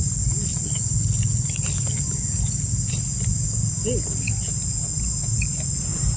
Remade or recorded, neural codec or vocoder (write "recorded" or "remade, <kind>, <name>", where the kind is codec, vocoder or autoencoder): recorded